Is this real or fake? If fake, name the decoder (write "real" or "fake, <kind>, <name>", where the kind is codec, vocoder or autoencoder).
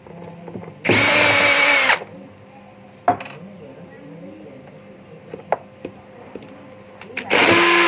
real